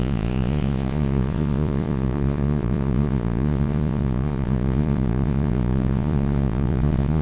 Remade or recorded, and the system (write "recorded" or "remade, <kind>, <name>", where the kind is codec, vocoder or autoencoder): remade, vocoder, Vocos